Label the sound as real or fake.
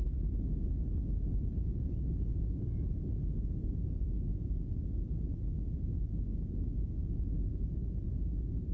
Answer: real